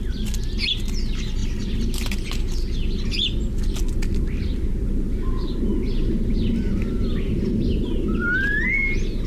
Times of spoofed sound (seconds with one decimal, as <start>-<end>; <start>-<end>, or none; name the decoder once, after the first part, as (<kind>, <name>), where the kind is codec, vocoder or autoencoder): none